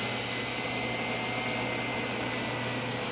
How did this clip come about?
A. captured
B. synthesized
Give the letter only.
A